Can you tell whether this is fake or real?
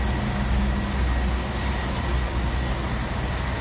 real